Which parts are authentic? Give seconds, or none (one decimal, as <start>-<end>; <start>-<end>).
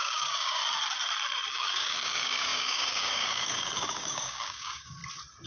0.6-1.5; 5.0-5.5